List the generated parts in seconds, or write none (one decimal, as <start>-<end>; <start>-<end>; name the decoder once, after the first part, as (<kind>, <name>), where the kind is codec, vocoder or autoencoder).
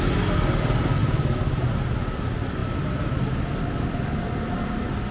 1.0-1.8 (vocoder, BigVGAN v2)